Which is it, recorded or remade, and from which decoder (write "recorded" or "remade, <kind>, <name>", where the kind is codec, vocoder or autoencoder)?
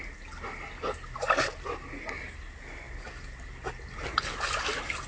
recorded